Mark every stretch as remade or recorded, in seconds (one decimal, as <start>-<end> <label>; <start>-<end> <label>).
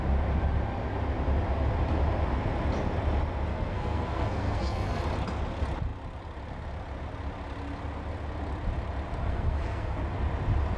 0.0-3.5 recorded; 3.5-5.0 remade; 5.0-9.2 recorded; 9.2-10.0 remade; 10.0-10.8 recorded